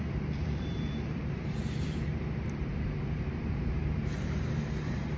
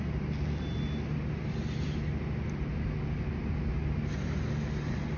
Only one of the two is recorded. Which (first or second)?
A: second